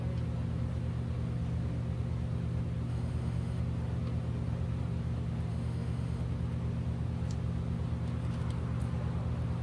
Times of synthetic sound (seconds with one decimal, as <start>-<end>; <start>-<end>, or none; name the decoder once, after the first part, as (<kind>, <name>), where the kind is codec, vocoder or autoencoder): 2.9-3.6 (autoencoder, DAC-VAE); 5.5-6.2